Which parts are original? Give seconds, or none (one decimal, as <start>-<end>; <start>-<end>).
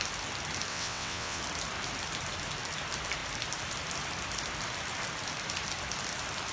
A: 0.0-0.7; 1.4-6.5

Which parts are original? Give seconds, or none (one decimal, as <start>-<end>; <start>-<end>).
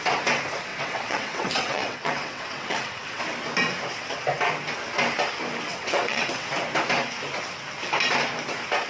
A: 0.0-0.7; 3.2-5.7; 6.5-8.9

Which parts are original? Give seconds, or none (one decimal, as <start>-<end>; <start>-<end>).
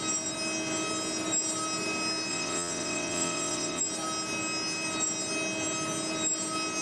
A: 0.0-2.3; 3.8-6.8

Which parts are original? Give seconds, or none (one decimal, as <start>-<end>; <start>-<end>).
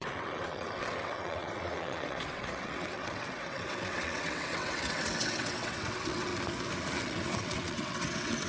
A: 6.3-7.0